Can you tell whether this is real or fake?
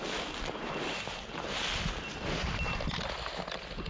real